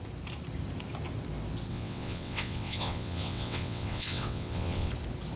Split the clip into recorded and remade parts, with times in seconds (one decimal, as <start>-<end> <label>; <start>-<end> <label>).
0.0-1.7 recorded; 1.7-4.9 remade; 4.9-5.4 recorded